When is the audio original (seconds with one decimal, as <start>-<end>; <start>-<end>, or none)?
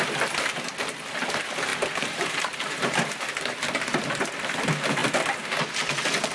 0.0-1.7; 3.1-6.3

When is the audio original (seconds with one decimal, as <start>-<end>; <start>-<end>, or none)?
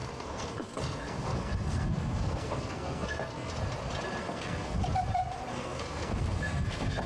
3.5-4.2; 4.8-5.5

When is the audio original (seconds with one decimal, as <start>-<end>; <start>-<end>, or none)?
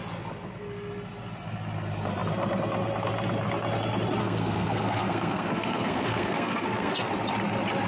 0.0-4.2; 7.1-7.9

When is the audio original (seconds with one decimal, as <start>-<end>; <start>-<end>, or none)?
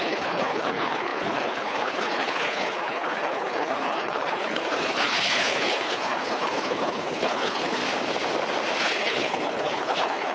7.8-8.8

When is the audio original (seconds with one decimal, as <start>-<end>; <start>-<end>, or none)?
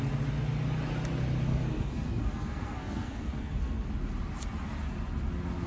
0.0-1.5; 3.9-5.7